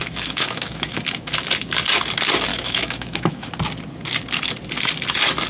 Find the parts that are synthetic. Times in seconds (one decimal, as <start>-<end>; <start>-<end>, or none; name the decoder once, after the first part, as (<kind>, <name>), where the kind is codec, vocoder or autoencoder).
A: 0.0-1.3 (autoencoder, DAC-VAE); 2.5-3.5